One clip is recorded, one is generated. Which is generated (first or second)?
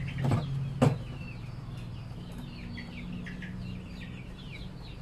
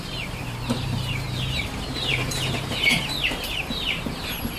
second